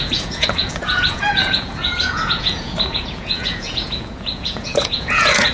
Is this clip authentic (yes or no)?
no